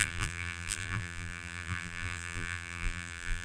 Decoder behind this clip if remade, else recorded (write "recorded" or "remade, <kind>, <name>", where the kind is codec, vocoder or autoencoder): remade, vocoder, BigVGAN v2